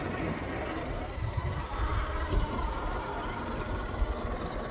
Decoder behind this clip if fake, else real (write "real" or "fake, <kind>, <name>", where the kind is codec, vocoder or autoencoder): real